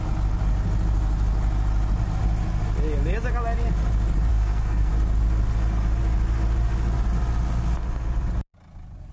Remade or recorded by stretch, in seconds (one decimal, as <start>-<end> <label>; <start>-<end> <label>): 0.0-4.3 recorded; 4.3-4.9 remade; 4.9-9.1 recorded